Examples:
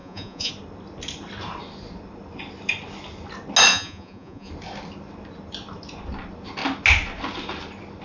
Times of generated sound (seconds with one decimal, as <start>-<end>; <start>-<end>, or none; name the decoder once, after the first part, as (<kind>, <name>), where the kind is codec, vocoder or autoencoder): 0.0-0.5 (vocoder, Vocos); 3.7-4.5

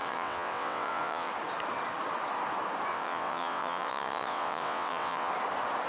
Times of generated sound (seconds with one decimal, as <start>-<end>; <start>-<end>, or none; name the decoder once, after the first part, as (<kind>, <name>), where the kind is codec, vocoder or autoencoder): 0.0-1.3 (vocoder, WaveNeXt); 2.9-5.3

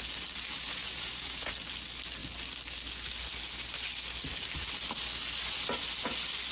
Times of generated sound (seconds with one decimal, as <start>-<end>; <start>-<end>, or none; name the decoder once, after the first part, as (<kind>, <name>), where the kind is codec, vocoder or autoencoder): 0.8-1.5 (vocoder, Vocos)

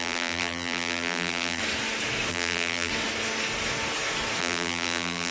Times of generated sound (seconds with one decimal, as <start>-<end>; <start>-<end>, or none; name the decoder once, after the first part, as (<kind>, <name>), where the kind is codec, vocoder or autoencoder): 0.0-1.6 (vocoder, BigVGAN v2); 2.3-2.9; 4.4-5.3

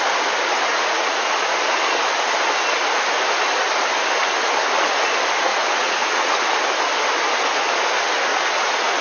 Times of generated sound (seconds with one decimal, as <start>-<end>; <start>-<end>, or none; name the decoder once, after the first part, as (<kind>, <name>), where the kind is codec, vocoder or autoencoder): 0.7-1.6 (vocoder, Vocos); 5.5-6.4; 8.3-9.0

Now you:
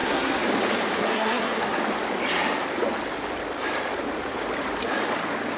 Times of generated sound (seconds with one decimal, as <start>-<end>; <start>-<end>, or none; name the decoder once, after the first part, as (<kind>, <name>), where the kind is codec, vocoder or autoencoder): 0.0-0.5 (codec, SNAC); 1.0-1.8